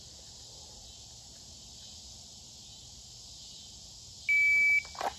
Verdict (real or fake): real